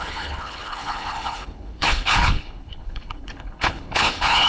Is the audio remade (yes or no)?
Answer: yes